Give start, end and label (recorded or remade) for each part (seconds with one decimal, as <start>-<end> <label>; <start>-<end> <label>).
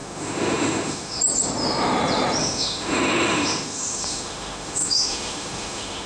0.0-1.2 remade; 1.2-2.4 recorded; 2.4-6.1 remade